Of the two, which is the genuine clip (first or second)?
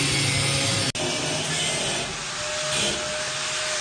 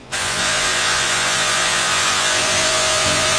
first